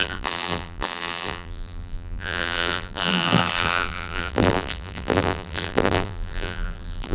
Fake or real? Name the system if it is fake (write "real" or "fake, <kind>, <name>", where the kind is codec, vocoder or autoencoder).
fake, vocoder, BigVGAN v2